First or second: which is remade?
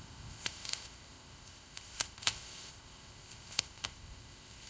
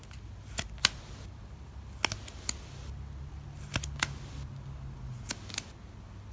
first